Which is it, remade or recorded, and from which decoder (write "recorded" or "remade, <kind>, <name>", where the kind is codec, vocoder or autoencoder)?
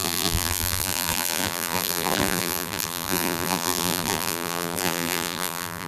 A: remade, vocoder, BigVGAN v2